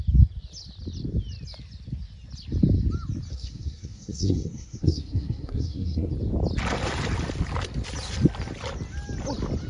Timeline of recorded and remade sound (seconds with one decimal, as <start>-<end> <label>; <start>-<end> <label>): 0.0-3.3 recorded; 3.3-6.1 remade; 6.1-9.7 recorded